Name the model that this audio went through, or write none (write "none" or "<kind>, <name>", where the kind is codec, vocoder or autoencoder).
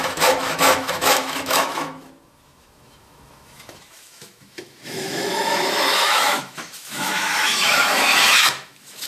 autoencoder, DAC-VAE